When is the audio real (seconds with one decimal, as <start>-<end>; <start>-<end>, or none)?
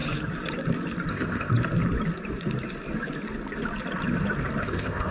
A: 0.0-1.1; 1.5-4.6